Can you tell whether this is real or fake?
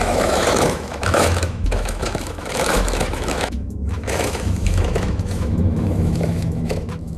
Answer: fake